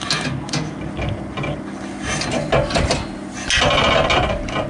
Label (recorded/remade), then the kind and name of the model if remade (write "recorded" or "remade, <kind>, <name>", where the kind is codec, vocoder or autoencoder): recorded